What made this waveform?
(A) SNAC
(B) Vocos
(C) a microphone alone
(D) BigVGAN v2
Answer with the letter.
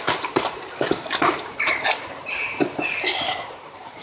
D